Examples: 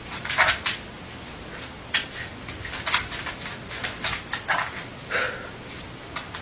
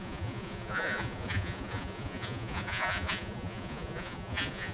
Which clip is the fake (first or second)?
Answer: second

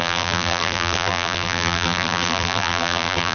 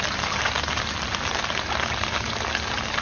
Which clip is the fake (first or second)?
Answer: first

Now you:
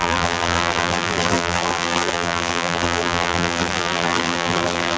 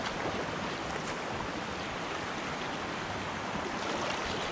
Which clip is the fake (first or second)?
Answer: first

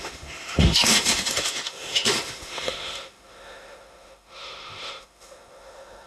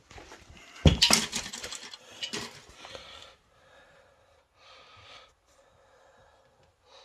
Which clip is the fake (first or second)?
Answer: first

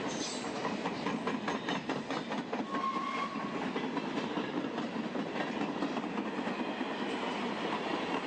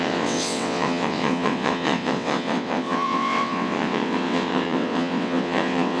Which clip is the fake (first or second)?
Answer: second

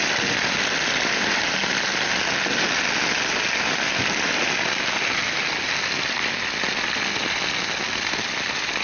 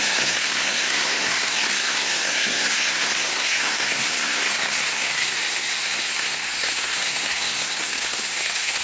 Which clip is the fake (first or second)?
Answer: second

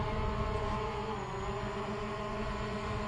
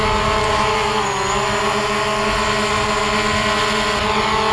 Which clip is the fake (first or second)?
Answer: first